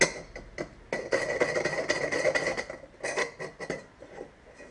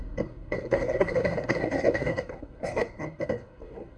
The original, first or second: first